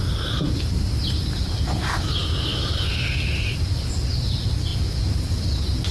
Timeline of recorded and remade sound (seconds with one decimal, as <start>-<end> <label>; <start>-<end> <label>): 0.0-2.5 recorded; 2.5-4.0 remade; 4.0-5.9 recorded